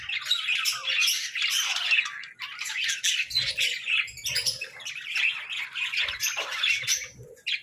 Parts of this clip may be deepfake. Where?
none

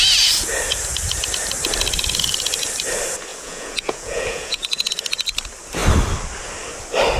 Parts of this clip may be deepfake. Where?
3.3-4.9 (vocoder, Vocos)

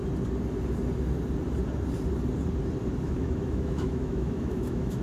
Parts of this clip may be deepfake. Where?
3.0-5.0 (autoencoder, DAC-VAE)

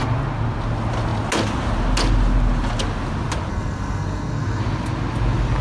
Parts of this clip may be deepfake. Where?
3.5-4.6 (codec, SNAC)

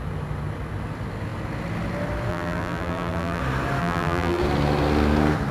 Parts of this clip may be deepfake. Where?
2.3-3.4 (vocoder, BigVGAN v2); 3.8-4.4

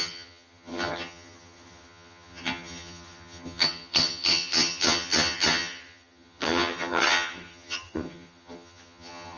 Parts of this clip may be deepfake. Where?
0.0-9.4 (vocoder, HiFi-GAN)

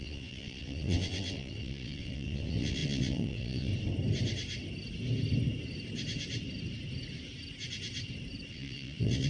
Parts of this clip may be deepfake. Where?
0.0-3.7 (vocoder, WaveNeXt); 8.5-9.3

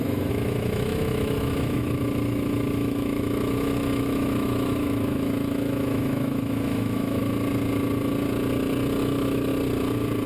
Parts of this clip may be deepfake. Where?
0.0-7.2 (autoencoder, DAC-VAE); 9.0-9.5